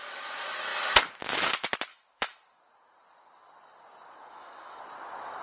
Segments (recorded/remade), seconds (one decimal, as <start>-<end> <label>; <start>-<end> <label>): 0.0-1.9 recorded; 1.9-2.6 remade; 2.6-4.3 recorded; 4.3-4.8 remade; 4.8-5.4 recorded